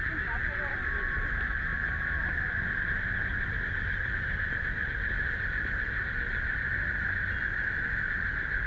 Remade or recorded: recorded